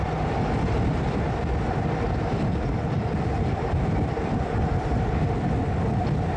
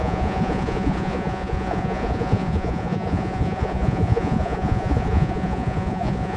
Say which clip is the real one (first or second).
first